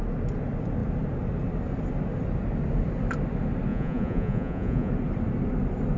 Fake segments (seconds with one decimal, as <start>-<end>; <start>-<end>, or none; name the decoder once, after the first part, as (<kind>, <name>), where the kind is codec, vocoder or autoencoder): 3.7-4.9 (vocoder, Vocos)

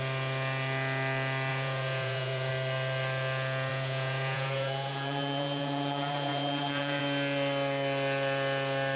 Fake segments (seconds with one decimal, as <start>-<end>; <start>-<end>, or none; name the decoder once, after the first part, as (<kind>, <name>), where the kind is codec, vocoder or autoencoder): 1.5-2.5 (vocoder, Vocos); 3.7-7.0

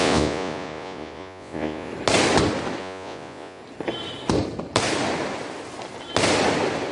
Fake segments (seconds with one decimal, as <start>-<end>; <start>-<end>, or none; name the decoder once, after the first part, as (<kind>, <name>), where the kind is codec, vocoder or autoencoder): 0.0-1.9 (vocoder, Vocos); 2.8-3.6

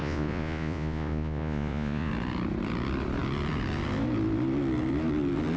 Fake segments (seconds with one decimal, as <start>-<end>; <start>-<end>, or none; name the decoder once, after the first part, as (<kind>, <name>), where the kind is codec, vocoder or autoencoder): 0.0-2.1 (vocoder, Vocos)

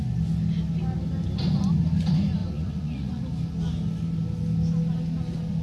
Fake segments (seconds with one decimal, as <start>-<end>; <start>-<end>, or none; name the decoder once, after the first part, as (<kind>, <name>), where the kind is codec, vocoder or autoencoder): 2.4-3.2 (vocoder, Vocos)

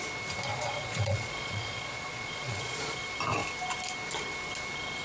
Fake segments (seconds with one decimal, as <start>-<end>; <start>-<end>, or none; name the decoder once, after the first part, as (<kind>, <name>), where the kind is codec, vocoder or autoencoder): 0.5-3.0 (vocoder, Vocos)

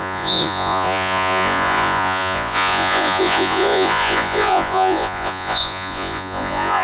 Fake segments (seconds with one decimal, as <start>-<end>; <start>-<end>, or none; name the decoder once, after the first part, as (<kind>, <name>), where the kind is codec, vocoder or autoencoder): 0.0-6.8 (vocoder, Vocos)